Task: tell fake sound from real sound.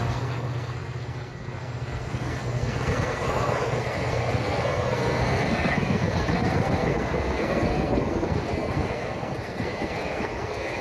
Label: fake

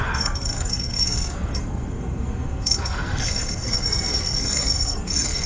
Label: fake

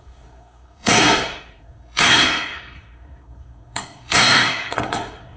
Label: fake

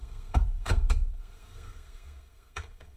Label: fake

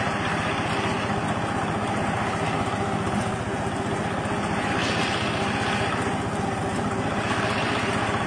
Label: real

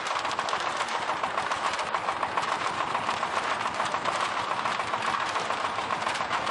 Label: real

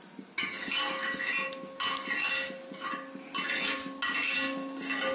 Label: real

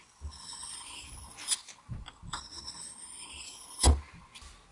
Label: real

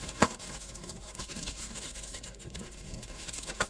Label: fake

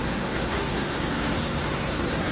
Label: fake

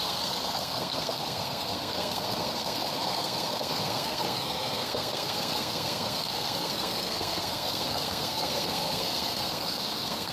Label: fake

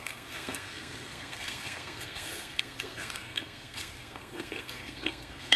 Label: fake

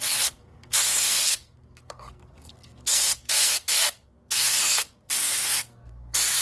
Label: fake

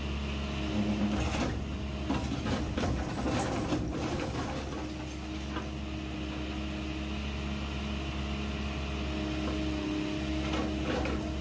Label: real